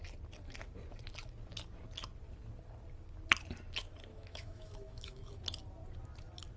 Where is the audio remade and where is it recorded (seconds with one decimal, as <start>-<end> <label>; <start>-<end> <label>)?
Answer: 0.0-4.1 recorded; 4.1-5.4 remade; 5.4-6.6 recorded

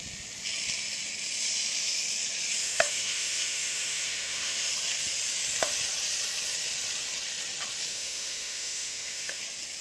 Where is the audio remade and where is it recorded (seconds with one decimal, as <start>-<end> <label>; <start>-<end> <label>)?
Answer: 0.0-2.6 recorded; 2.6-4.7 remade; 4.7-7.9 recorded; 7.9-9.4 remade; 9.4-9.8 recorded

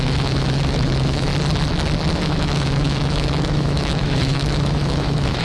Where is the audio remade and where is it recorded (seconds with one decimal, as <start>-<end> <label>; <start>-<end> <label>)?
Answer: 0.0-1.3 remade; 1.3-2.1 recorded; 2.1-5.4 remade

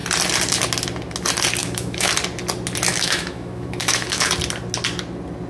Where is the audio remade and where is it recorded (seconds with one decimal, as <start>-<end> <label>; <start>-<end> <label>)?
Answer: 0.0-1.6 recorded; 1.6-2.1 remade; 2.1-2.9 recorded; 2.9-4.3 remade; 4.3-5.5 recorded

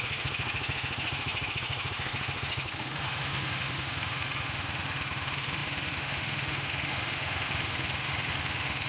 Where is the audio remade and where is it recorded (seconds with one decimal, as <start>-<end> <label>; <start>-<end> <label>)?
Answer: 0.0-8.9 remade